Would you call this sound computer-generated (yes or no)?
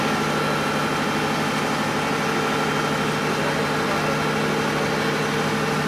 no